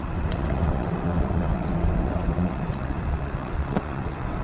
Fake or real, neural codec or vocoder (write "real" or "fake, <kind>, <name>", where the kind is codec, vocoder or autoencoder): fake, vocoder, WaveNeXt